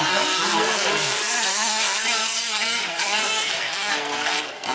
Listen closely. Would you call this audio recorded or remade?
remade